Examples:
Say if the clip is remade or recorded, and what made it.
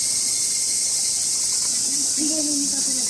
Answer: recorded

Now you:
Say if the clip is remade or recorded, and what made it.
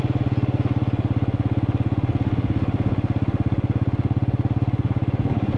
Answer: recorded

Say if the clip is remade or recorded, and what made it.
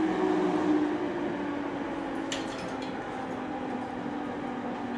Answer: recorded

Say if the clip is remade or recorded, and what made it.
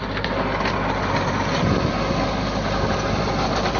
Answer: recorded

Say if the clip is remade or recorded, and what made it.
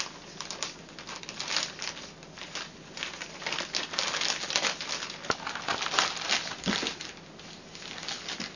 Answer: recorded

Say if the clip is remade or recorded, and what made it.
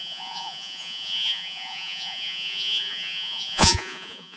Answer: remade, vocoder, Vocos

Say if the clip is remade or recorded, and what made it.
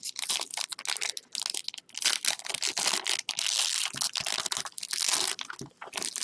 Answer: recorded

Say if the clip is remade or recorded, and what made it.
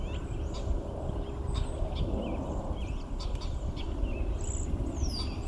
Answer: recorded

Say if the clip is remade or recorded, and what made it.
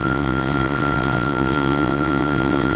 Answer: remade, vocoder, WaveNeXt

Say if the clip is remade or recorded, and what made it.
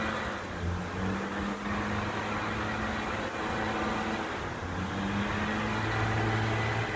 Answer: recorded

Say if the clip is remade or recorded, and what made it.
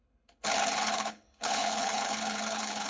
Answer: remade, codec, HILCodec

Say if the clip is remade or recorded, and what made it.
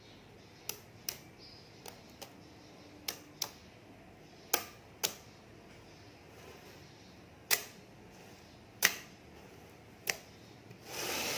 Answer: recorded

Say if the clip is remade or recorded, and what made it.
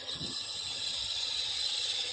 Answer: remade, vocoder, HiFi-GAN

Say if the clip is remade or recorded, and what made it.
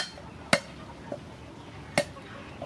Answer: recorded